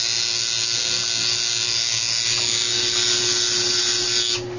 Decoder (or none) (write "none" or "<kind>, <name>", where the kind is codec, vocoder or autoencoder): none